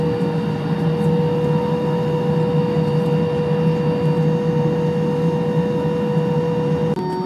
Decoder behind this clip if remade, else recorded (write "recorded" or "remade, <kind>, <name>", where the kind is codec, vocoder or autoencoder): recorded